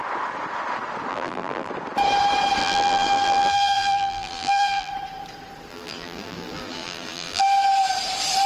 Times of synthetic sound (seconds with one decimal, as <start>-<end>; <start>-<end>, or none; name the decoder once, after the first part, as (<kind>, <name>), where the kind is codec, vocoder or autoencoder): 1.1-1.7 (vocoder, BigVGAN v2); 2.6-4.9; 5.7-7.4

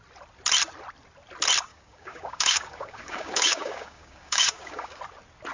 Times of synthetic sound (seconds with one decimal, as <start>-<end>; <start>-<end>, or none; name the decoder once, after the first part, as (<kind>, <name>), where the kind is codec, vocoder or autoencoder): 1.7-5.0 (codec, DAC)

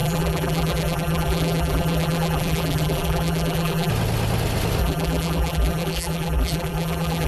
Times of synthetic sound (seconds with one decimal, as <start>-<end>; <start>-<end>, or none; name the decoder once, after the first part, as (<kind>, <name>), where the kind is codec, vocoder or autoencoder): 0.0-3.9 (vocoder, BigVGAN v2); 4.8-7.3